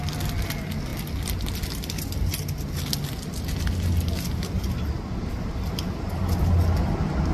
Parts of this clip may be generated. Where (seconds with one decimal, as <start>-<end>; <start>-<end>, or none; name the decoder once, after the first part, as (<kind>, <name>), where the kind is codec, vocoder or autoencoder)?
none